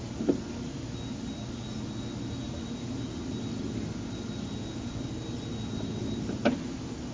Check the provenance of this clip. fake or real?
real